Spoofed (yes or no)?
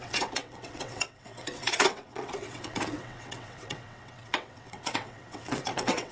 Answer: yes